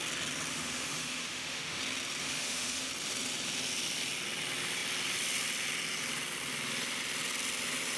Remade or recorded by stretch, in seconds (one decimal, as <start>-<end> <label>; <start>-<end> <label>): 0.0-0.5 recorded; 0.5-1.8 remade; 1.8-2.2 recorded; 2.2-2.9 remade; 2.9-8.0 recorded